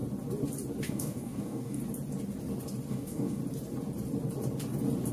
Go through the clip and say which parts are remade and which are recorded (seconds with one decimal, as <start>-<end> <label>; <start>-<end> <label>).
0.0-0.8 recorded; 0.8-1.8 remade; 1.8-2.9 recorded; 2.9-3.4 remade; 3.4-5.1 recorded